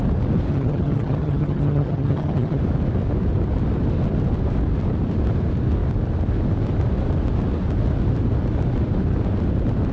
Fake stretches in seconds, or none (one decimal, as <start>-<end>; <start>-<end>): 0.5-2.6